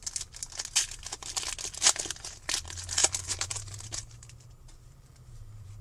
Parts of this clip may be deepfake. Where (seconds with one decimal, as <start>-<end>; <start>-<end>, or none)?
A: 3.0-5.8